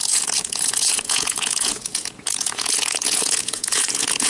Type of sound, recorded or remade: remade